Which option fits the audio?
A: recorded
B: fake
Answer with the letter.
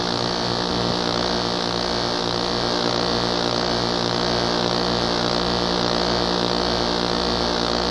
A